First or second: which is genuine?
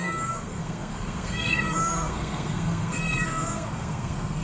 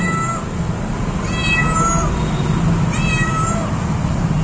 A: second